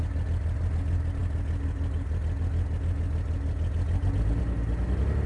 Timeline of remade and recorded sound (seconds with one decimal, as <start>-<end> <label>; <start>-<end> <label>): 0.0-5.3 recorded